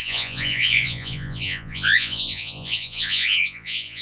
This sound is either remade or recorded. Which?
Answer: remade